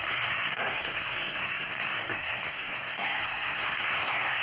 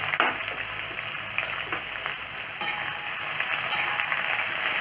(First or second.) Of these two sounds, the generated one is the first